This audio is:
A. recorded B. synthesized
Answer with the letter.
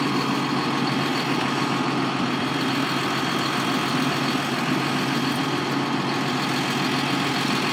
A